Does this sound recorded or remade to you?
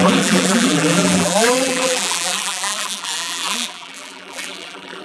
remade